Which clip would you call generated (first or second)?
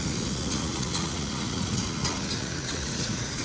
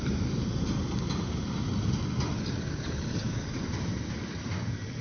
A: first